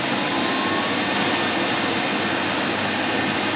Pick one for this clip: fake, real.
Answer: real